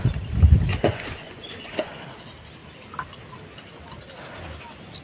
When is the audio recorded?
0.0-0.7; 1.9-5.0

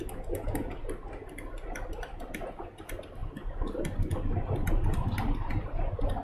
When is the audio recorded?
0.0-6.2

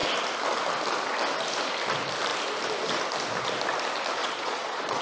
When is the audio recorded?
0.0-4.2

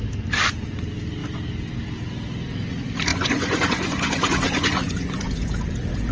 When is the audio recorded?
0.0-3.1

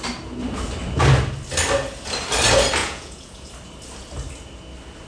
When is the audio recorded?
0.0-2.8; 3.5-5.1

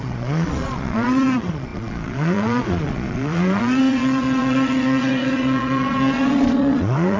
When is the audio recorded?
none

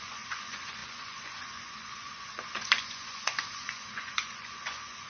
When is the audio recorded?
none

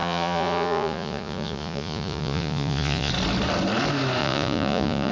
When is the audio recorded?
3.1-4.2